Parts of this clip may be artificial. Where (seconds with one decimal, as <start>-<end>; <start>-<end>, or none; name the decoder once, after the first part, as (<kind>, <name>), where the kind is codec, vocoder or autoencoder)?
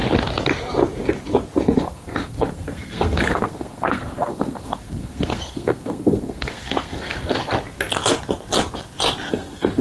1.8-7.4 (codec, SNAC); 9.3-9.8